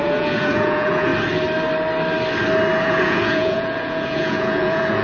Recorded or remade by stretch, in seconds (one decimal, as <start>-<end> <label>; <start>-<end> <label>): 0.0-1.1 remade; 1.1-2.8 recorded; 2.8-5.0 remade